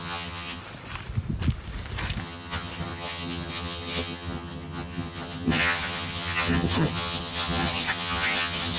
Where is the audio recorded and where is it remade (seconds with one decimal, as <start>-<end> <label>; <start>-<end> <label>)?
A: 0.0-0.6 remade; 0.6-2.2 recorded; 2.2-8.8 remade